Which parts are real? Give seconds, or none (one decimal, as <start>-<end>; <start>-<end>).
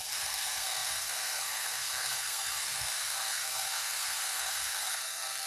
none